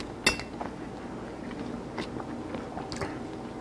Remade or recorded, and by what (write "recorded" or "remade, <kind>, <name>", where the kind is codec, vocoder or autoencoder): recorded